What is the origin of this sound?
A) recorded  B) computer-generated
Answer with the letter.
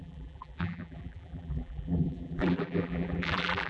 B